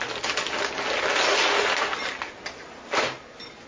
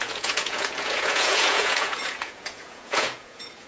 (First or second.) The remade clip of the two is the second